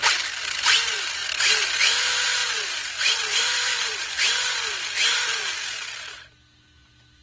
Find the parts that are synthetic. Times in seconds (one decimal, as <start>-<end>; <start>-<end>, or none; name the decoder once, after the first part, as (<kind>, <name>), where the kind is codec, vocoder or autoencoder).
2.4-4.0 (vocoder, BigVGAN v2)